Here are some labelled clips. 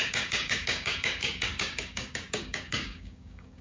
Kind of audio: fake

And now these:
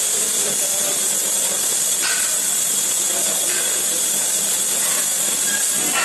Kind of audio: real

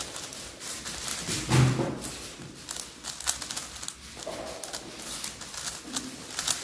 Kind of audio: real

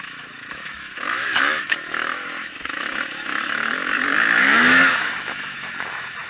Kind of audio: fake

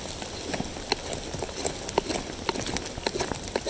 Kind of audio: real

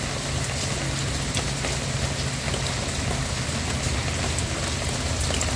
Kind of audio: real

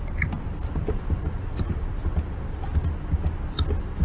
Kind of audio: real